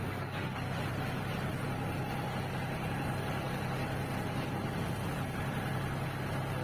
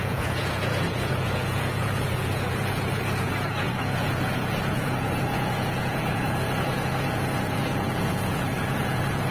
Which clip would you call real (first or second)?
first